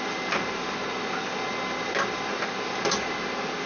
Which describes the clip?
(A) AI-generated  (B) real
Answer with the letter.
B